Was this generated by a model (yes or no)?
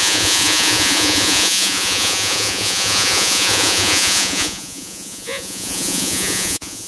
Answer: yes